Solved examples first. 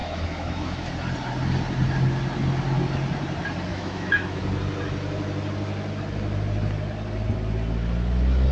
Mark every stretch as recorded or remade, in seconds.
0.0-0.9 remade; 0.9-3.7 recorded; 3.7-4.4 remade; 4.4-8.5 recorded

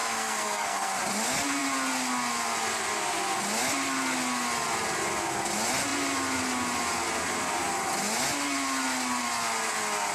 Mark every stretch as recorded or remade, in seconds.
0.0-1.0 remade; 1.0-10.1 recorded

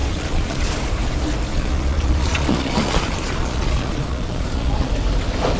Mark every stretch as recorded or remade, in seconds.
0.0-0.7 remade; 0.7-1.5 recorded; 1.5-4.9 remade; 4.9-5.6 recorded

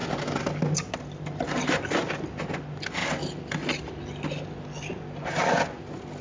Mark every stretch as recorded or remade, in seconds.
0.0-6.2 recorded

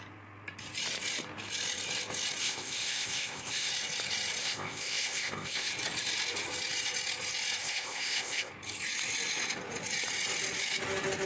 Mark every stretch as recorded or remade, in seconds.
0.0-2.4 recorded; 2.4-3.7 remade; 3.7-4.4 recorded; 4.4-5.7 remade; 5.7-7.6 recorded; 7.6-8.5 remade; 8.5-11.3 recorded

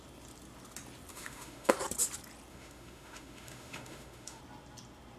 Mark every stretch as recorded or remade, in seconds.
0.0-1.1 recorded; 1.1-1.7 remade; 1.7-2.5 recorded; 2.5-4.4 remade; 4.4-5.2 recorded

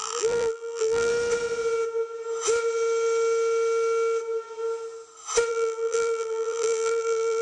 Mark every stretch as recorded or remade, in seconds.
0.0-1.1 remade; 1.1-5.5 recorded; 5.5-7.4 remade